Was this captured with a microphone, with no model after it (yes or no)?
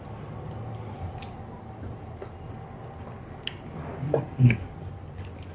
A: yes